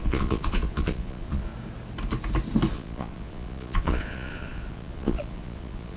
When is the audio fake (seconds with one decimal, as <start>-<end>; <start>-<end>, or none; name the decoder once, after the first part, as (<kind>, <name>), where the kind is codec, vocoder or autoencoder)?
0.0-1.5 (vocoder, Vocos); 2.7-6.0